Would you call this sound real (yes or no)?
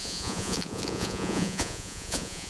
no